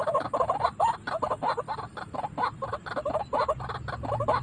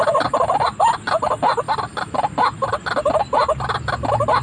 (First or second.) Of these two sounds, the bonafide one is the second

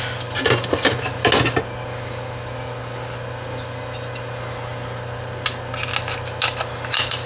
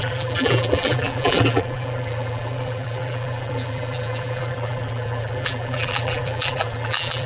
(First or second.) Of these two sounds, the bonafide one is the first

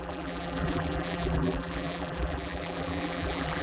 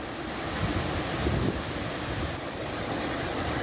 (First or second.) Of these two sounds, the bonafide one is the second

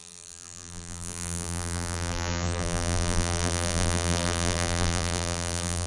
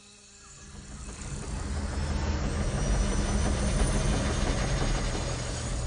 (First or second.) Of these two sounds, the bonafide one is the second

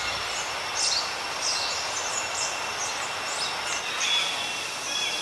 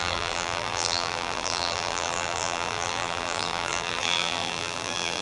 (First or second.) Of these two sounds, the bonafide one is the first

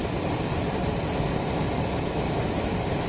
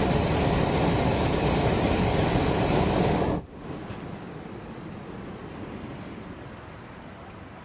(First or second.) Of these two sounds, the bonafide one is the first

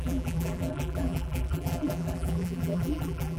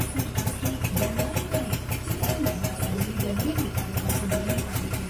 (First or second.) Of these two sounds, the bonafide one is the second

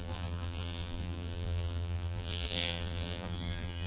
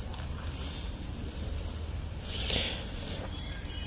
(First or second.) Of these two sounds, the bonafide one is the second